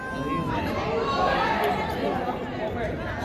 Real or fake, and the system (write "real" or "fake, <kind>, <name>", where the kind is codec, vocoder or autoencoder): real